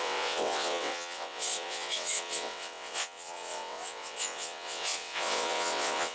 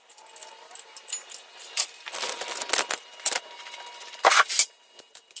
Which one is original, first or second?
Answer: second